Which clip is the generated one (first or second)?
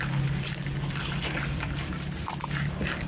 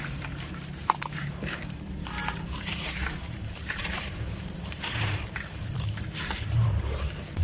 second